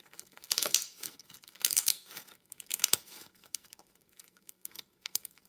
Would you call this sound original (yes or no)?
no